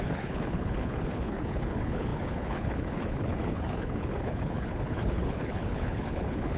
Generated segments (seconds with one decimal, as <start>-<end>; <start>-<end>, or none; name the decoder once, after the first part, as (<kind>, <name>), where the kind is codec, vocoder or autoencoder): 0.0-6.6 (codec, HILCodec)